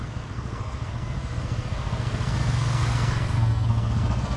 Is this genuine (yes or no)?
no